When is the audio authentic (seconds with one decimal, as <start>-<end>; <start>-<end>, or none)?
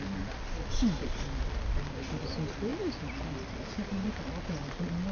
0.0-5.1